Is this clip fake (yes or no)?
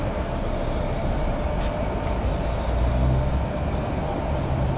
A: no